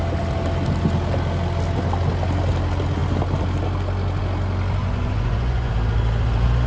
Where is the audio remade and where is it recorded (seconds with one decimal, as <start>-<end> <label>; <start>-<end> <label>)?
0.0-4.8 recorded; 4.8-5.7 remade; 5.7-6.7 recorded